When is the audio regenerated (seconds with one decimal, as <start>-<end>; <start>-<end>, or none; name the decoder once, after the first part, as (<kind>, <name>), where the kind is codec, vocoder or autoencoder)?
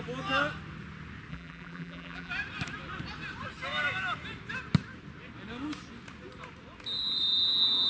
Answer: 1.3-2.3 (vocoder, BigVGAN v2)